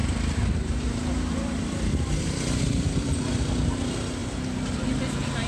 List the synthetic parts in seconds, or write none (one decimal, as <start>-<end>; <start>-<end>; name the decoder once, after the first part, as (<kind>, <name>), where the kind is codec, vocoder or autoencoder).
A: 0.0-3.3 (vocoder, BigVGAN v2); 4.2-5.5